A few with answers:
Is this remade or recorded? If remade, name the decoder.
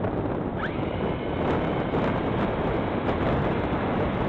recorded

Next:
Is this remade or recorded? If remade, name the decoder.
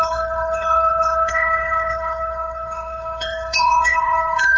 remade, codec, HILCodec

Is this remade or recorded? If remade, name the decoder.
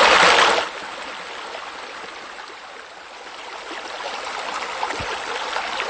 recorded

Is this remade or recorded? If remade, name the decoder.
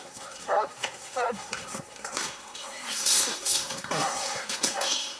remade, codec, SNAC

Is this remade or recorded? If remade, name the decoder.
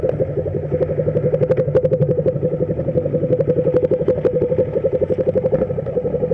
recorded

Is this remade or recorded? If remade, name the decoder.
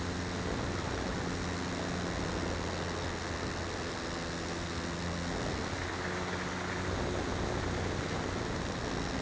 recorded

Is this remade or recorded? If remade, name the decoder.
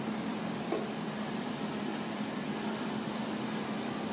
recorded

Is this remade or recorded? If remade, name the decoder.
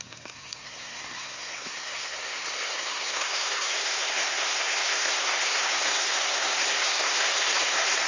remade, codec, SNAC